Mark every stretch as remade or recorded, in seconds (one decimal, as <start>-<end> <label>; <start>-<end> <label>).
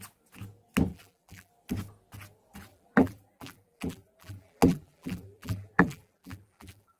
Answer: 0.0-0.9 recorded; 0.9-1.5 remade; 1.5-2.7 recorded; 2.7-7.0 remade